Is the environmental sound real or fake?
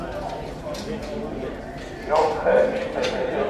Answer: real